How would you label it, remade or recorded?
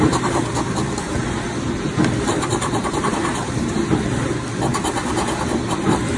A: remade